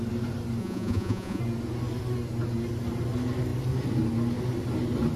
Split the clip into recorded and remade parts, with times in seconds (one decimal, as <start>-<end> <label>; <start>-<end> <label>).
0.0-0.6 recorded; 0.6-1.4 remade; 1.4-5.2 recorded